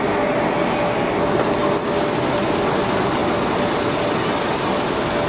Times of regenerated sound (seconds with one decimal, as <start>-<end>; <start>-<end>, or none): none